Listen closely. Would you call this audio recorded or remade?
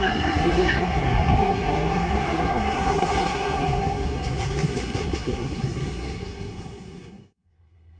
remade